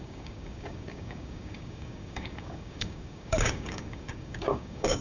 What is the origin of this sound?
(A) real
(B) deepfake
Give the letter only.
B